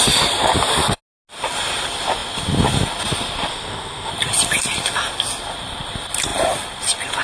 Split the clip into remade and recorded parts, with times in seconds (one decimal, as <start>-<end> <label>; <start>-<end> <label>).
0.0-3.5 recorded; 3.5-4.1 remade; 4.1-7.2 recorded